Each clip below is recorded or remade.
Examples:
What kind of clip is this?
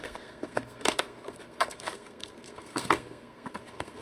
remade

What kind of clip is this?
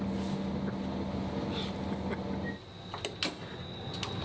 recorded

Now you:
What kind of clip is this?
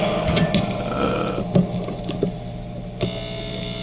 recorded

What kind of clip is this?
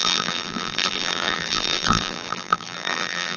remade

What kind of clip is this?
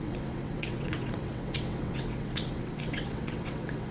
remade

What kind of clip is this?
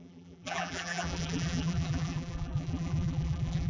remade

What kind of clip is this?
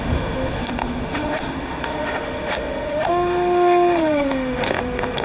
remade